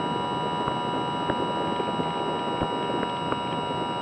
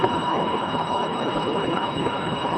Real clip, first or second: first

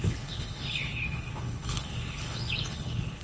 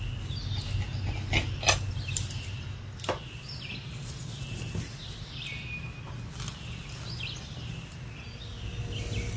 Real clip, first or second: second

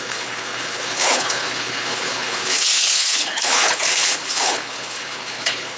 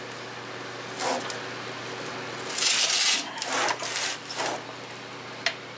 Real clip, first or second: second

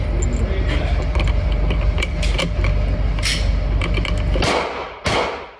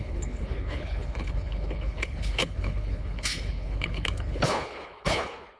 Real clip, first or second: first